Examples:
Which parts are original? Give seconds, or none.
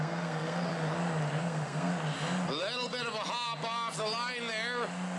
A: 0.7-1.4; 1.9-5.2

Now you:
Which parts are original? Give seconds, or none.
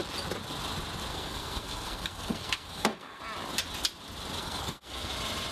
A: 0.0-1.1; 3.2-4.4; 5.1-5.5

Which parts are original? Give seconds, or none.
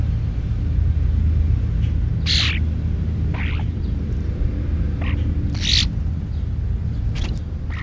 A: 0.0-7.8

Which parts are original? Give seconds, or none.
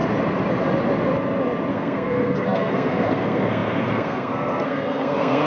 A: 0.0-1.7